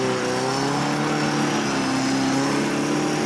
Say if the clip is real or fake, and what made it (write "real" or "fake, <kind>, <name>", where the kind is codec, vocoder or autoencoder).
real